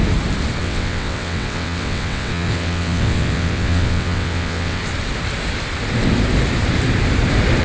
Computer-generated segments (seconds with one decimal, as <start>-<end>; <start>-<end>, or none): 0.6-4.8